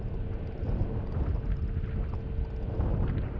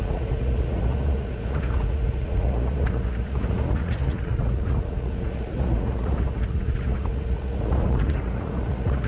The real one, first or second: first